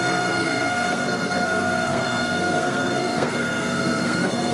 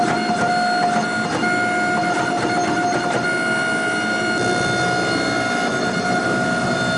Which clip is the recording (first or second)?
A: second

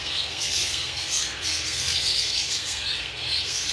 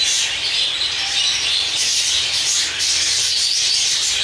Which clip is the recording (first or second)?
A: second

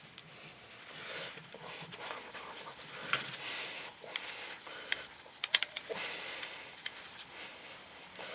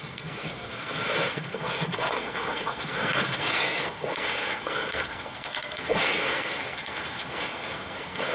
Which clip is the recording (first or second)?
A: first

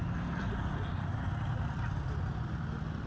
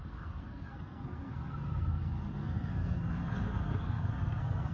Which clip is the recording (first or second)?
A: first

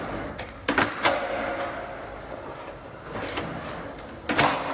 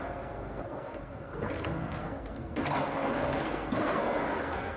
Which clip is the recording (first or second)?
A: first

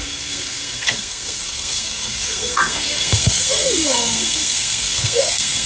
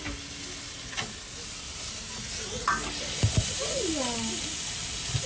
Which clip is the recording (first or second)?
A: second